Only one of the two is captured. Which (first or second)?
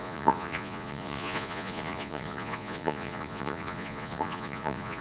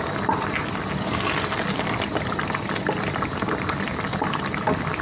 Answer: second